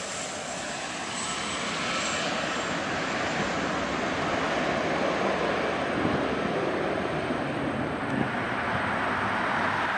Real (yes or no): yes